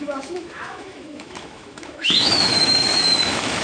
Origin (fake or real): fake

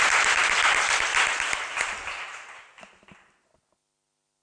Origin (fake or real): real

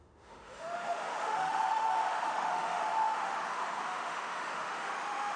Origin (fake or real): fake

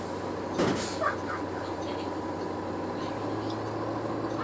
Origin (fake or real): real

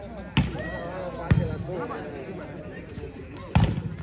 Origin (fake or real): real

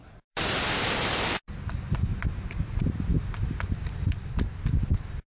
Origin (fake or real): real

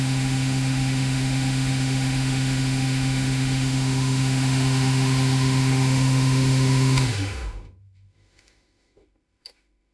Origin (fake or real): fake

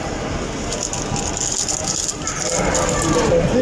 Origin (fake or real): real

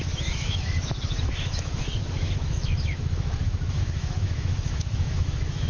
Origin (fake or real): fake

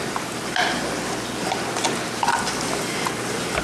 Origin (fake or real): real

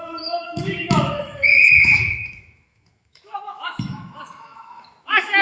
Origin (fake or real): fake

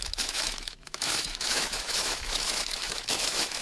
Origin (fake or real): fake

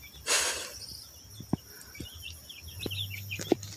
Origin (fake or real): real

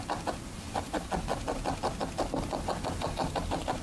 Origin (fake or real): real